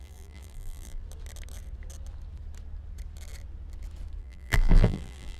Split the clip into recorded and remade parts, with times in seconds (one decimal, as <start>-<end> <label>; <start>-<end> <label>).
0.0-1.0 remade; 1.0-4.2 recorded; 4.2-5.4 remade